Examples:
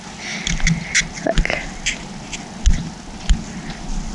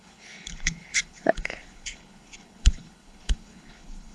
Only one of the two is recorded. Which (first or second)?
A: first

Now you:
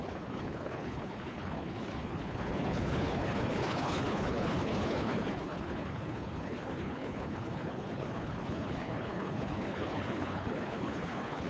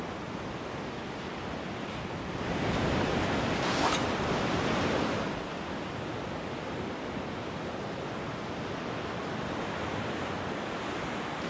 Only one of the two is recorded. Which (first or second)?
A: second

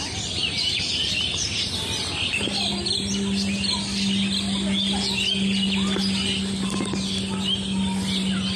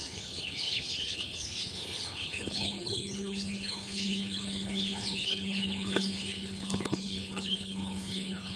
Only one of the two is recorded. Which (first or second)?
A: first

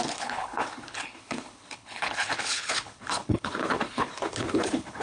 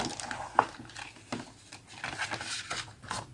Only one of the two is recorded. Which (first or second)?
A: second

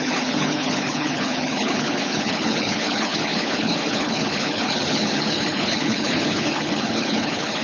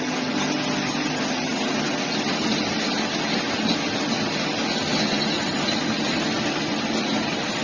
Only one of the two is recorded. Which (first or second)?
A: second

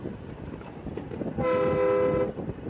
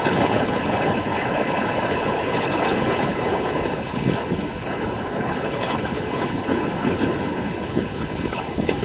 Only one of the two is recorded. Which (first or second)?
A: first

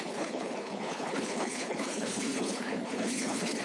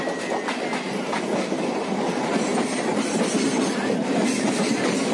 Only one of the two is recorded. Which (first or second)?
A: second